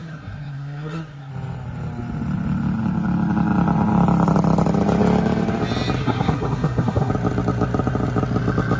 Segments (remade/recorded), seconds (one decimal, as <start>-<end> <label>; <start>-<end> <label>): 0.0-1.3 remade; 1.3-6.0 recorded; 6.0-7.1 remade; 7.1-8.8 recorded